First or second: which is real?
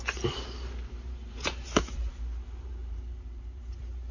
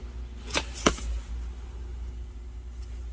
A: second